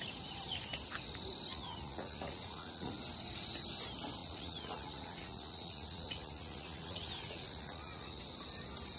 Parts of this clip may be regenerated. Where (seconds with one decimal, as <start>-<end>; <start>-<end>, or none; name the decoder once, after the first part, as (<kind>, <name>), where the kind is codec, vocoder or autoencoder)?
1.5-2.9 (vocoder, Vocos); 4.2-8.2